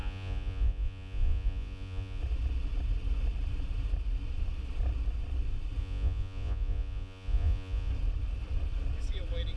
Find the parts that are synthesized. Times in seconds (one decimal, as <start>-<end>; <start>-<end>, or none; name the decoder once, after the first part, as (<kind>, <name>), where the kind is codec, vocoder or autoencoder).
0.0-2.2 (vocoder, Vocos); 5.8-7.9